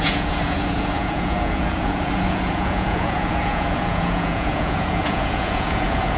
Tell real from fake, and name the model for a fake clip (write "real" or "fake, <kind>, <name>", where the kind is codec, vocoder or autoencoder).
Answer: fake, vocoder, Vocos